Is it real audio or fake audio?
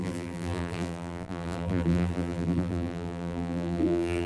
fake